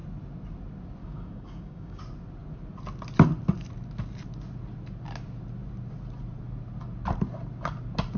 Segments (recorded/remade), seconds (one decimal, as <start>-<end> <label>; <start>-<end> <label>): 0.0-1.0 recorded; 1.0-2.0 remade; 2.0-8.2 recorded